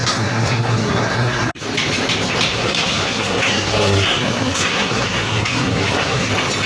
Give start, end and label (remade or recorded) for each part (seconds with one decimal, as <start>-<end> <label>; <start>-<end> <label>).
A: 0.0-1.6 remade; 1.6-2.5 recorded; 2.5-6.3 remade; 6.3-6.7 recorded